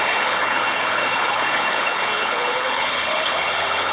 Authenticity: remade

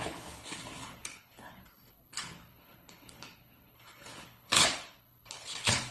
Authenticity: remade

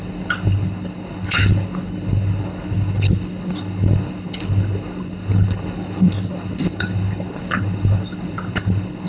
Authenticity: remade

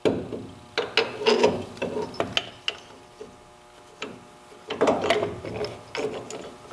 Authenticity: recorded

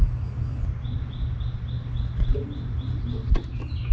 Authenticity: recorded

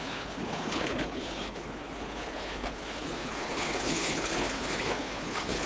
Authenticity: remade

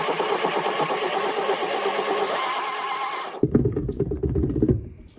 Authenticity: recorded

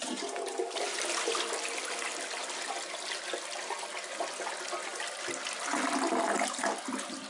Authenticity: recorded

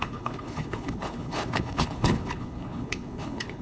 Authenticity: remade